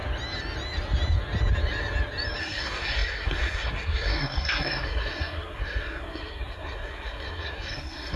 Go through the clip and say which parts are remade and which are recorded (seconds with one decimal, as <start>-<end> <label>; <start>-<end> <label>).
0.0-2.4 recorded; 2.4-8.2 remade